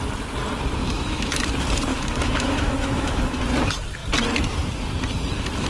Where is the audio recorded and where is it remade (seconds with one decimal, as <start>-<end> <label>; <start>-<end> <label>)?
0.0-0.8 recorded; 0.8-1.4 remade; 1.4-1.9 recorded; 1.9-3.4 remade; 3.4-5.7 recorded